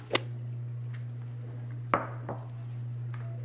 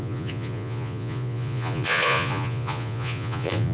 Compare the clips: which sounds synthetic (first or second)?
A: second